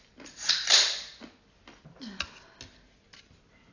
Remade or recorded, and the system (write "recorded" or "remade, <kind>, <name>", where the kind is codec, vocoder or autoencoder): recorded